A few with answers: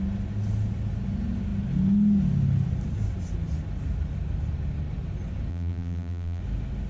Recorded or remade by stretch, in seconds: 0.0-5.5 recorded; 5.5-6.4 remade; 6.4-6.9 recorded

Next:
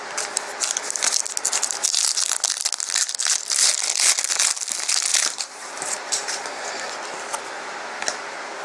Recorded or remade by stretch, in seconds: 0.0-5.1 recorded; 5.1-6.9 remade; 6.9-8.6 recorded

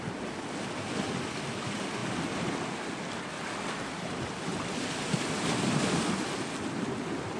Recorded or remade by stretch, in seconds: 0.0-7.4 recorded

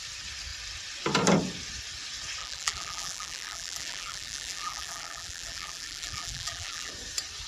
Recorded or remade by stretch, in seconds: 0.0-2.4 recorded; 2.4-6.9 remade; 6.9-7.5 recorded

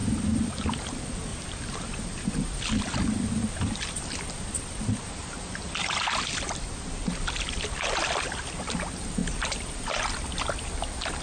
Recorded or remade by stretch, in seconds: 0.0-0.9 remade; 0.9-1.3 recorded; 1.3-6.2 remade; 6.2-9.2 recorded; 9.2-10.0 remade; 10.0-11.2 recorded

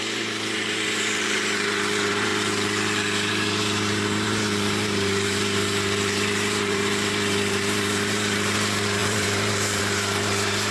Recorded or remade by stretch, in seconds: 0.0-2.3 remade; 2.3-3.3 recorded; 3.3-10.7 remade

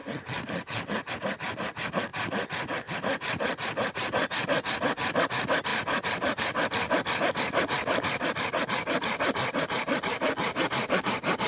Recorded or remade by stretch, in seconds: 0.0-5.7 recorded; 5.7-7.2 remade; 7.2-11.5 recorded

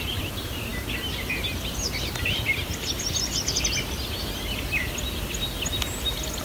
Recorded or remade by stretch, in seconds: 0.0-6.4 recorded